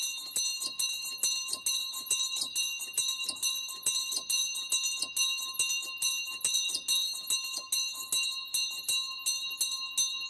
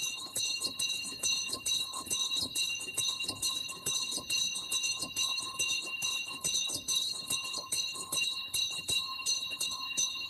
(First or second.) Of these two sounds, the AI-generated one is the second